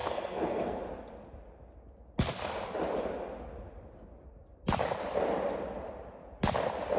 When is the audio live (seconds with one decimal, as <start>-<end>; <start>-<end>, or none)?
0.8-7.0